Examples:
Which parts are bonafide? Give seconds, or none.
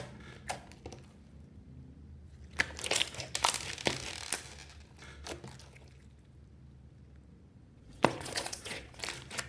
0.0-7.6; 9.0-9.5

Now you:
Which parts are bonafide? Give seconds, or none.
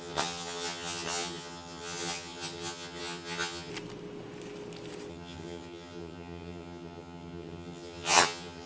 3.7-5.1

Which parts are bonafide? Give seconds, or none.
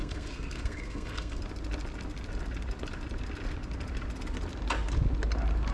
1.4-5.7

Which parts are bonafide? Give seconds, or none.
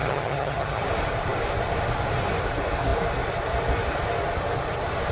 0.8-5.1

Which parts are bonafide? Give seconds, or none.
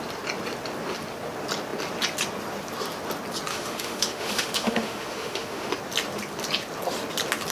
0.0-3.5; 5.7-7.5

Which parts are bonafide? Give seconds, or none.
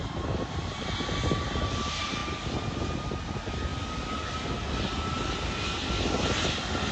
0.0-6.9